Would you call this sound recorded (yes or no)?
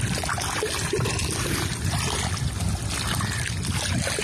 yes